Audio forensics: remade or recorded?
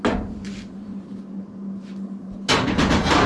recorded